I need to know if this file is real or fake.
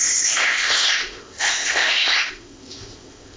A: fake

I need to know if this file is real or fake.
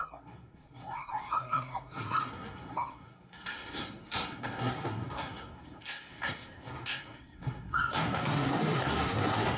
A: fake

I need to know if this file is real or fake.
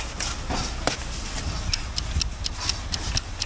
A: real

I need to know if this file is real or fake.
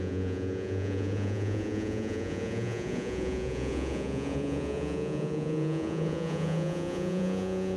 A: fake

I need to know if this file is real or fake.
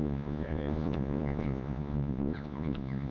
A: fake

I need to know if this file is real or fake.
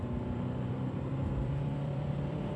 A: fake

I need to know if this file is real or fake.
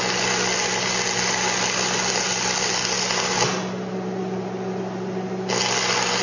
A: real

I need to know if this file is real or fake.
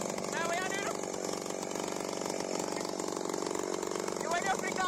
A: real